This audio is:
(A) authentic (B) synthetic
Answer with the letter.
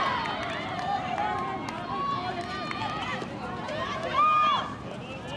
A